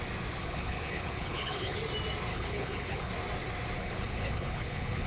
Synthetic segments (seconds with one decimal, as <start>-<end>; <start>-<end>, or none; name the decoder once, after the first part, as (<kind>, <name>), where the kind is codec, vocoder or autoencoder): 0.4-1.8 (codec, HILCodec); 2.3-3.1; 3.8-5.1